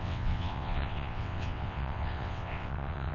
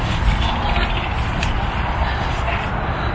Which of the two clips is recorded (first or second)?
second